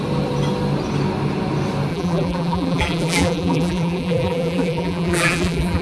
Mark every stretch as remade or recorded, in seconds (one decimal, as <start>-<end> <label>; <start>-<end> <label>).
0.0-1.9 recorded; 1.9-5.8 remade